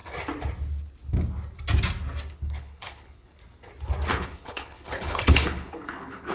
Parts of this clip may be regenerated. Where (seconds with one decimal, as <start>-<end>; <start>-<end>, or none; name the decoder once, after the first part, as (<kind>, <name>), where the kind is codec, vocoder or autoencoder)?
2.3-3.4 (codec, HILCodec); 4.1-6.3